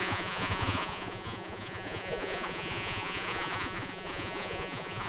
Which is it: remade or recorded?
remade